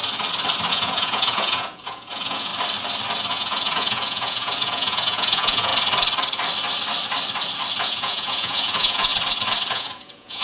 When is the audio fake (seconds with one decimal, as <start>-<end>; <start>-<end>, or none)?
0.7-2.5; 3.3-5.7; 7.8-9.1; 9.7-10.4